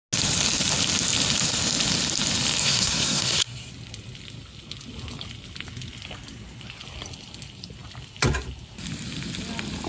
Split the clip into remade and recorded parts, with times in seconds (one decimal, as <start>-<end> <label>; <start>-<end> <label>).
0.0-2.6 recorded; 2.6-3.7 remade; 3.7-9.9 recorded